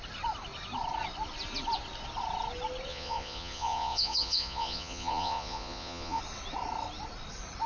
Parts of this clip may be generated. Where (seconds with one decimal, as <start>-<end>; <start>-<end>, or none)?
2.9-6.2